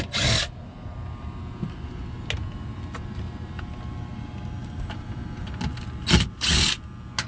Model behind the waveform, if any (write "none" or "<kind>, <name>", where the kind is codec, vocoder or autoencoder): none